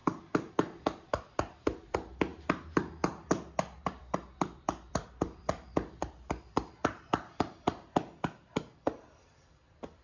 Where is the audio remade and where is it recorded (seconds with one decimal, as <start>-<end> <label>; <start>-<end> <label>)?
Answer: 0.0-10.0 remade